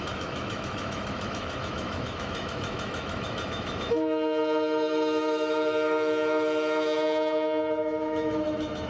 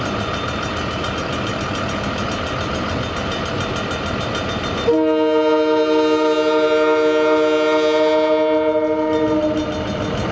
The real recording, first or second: second